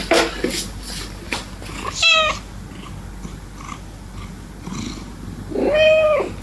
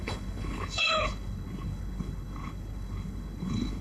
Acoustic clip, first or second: first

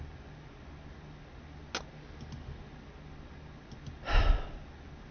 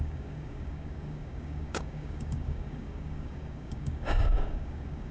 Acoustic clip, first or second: first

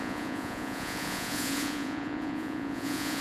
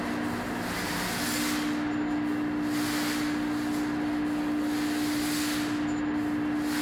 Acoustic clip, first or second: second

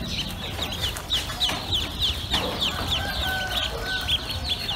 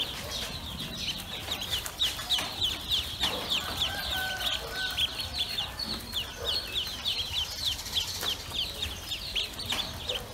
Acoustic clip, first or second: first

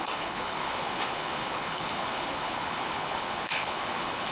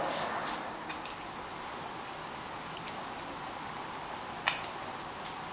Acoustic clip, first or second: second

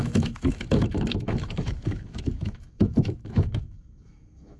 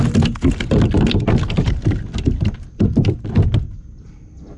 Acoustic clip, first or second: second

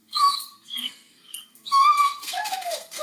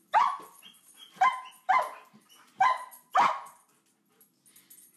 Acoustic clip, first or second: second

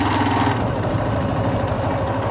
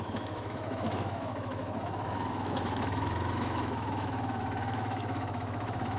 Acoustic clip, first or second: first